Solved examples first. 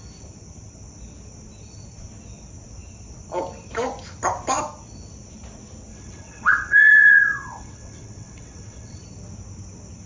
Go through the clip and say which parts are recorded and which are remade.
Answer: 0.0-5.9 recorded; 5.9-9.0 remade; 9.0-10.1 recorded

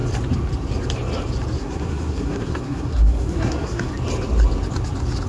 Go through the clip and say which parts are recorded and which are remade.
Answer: 0.0-1.6 recorded; 1.6-3.9 remade; 3.9-5.3 recorded

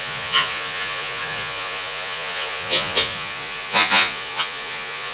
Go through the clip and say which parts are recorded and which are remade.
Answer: 0.0-5.1 remade

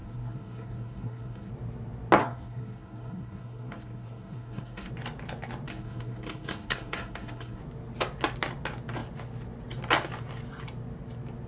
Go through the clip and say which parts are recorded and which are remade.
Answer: 0.0-1.5 remade; 1.5-2.2 recorded; 2.2-4.9 remade; 4.9-5.7 recorded; 5.7-7.6 remade; 7.6-11.5 recorded

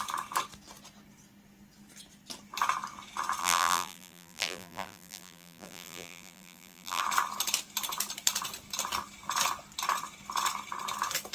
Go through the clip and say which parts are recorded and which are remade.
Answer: 0.0-3.4 recorded; 3.4-7.0 remade; 7.0-11.3 recorded

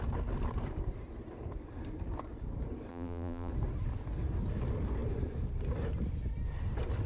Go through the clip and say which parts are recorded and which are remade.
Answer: 0.0-2.9 recorded; 2.9-3.5 remade; 3.5-7.1 recorded

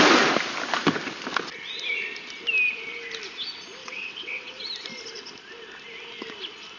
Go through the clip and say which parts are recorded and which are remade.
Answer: 0.0-3.8 recorded; 3.8-4.5 remade; 4.5-6.8 recorded

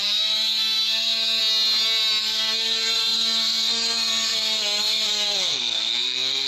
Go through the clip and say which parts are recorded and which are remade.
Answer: 0.0-1.4 remade; 1.4-2.2 recorded; 2.2-6.5 remade